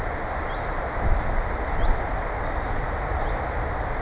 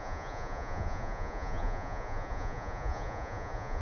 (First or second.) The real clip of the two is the first